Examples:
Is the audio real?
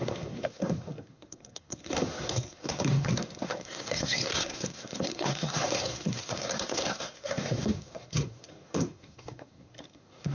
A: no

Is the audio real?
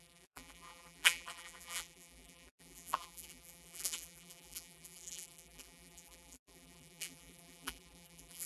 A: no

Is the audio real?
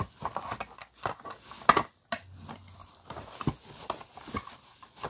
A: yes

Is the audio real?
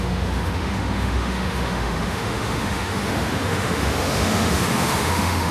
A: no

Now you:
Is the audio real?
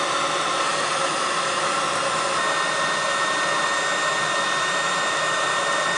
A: yes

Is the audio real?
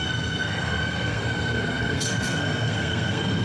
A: no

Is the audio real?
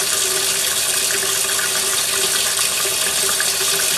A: yes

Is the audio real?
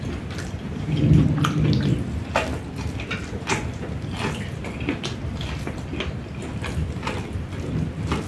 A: yes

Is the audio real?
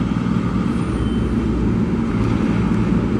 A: yes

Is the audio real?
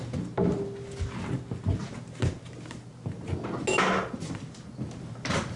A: yes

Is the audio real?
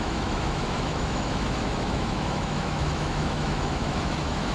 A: no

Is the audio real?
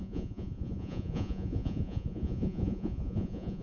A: no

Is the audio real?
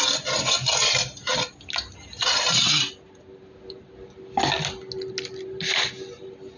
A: yes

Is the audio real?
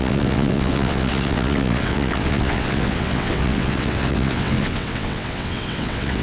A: no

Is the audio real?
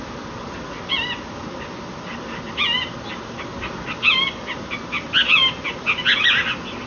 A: yes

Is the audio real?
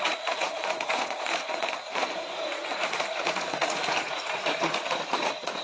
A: no